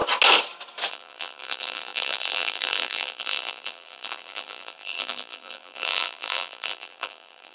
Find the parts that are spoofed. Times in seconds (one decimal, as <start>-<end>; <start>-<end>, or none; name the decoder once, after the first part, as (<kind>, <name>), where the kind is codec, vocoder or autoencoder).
0.9-7.5 (vocoder, BigVGAN v2)